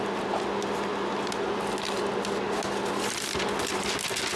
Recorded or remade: recorded